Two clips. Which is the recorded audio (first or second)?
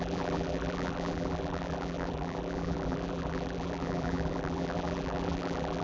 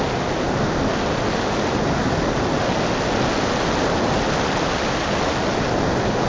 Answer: second